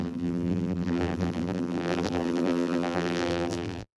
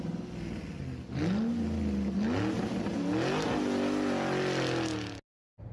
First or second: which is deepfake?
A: first